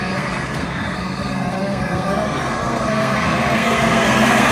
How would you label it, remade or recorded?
remade